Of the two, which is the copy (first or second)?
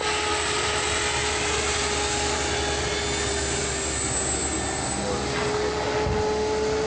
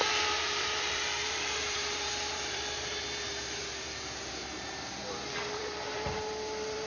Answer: second